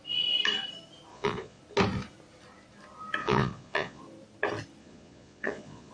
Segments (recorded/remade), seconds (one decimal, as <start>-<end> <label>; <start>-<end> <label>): 0.0-1.1 recorded; 1.1-1.6 remade; 1.6-3.2 recorded; 3.2-4.0 remade; 4.0-4.8 recorded; 4.8-5.9 remade